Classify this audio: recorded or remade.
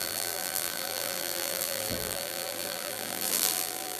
remade